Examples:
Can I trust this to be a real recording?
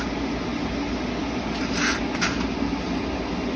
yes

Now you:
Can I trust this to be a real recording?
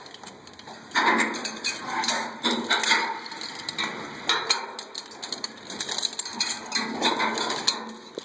yes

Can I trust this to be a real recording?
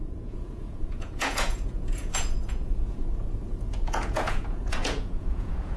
no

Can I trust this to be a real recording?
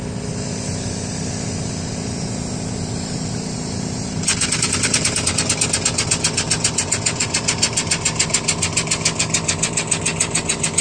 yes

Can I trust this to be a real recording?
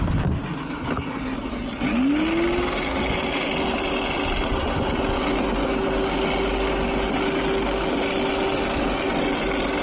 yes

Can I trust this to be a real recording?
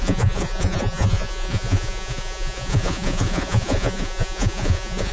no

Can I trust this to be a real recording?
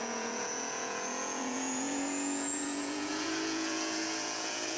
no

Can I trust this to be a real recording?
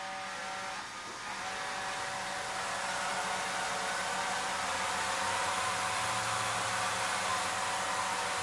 yes